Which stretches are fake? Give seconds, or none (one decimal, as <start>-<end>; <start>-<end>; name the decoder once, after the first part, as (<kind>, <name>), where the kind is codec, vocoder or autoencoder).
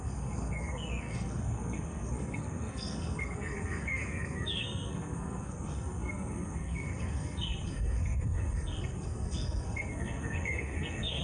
0.0-11.2 (codec, SNAC)